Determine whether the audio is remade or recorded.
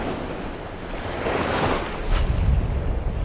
recorded